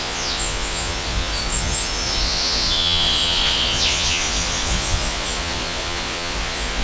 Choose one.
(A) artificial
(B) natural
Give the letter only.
A